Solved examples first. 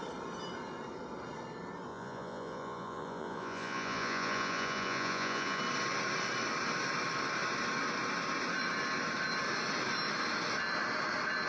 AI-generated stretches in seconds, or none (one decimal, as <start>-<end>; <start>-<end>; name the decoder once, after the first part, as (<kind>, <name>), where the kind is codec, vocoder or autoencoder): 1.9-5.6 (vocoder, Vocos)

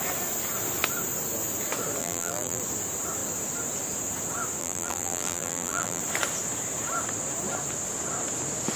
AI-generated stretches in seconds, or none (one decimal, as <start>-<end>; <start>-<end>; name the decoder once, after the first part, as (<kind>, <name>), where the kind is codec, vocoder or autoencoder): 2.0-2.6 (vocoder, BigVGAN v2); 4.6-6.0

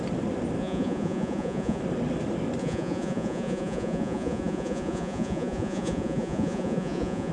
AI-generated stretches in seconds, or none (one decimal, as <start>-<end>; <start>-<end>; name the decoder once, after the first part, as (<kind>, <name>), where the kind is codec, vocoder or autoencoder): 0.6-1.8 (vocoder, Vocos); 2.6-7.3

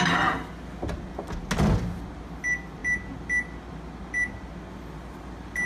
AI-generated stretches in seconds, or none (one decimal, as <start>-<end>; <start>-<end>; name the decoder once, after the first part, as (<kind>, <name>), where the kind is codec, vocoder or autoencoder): none

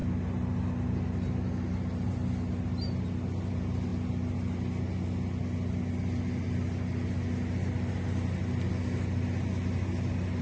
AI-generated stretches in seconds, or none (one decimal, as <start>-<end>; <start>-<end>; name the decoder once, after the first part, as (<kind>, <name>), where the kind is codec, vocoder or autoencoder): none